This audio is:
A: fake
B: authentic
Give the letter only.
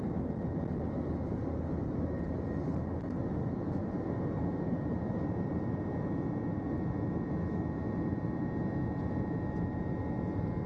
B